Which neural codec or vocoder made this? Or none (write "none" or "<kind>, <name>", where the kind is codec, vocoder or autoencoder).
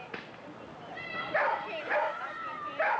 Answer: none